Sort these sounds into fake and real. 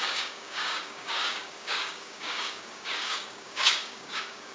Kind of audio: fake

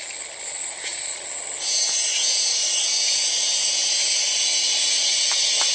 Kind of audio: real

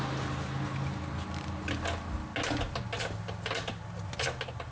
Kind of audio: real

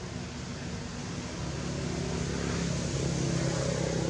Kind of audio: real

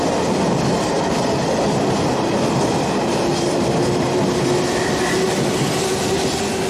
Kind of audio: real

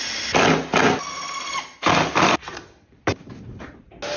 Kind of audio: real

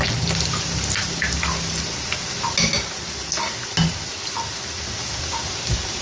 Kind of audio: real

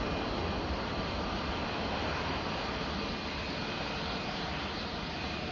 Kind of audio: real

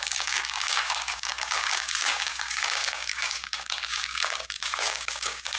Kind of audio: fake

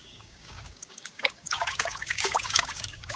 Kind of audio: fake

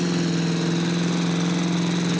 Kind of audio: real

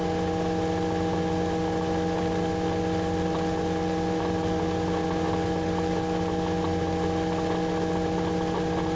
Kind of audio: real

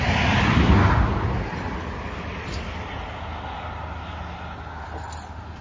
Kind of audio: real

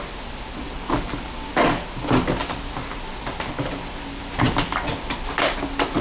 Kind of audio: real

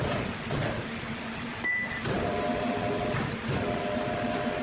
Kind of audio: real